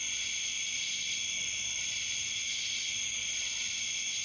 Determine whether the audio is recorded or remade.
recorded